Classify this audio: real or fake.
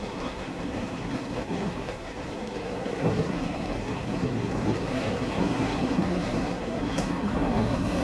fake